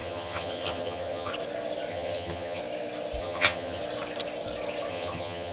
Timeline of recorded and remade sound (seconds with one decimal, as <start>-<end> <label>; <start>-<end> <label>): 0.0-1.3 remade; 1.3-1.9 recorded; 1.9-2.6 remade; 2.6-3.2 recorded; 3.2-3.8 remade; 3.8-4.9 recorded; 4.9-5.5 remade